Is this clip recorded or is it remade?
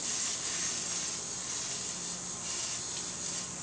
recorded